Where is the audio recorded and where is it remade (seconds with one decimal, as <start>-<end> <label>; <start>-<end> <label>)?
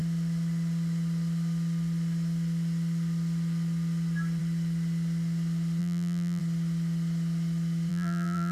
0.0-5.8 recorded; 5.8-6.4 remade; 6.4-7.9 recorded; 7.9-8.5 remade